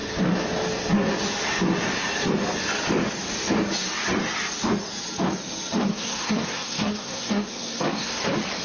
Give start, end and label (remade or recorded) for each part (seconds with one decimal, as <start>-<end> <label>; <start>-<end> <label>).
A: 0.0-5.9 recorded; 5.9-8.2 remade; 8.2-8.6 recorded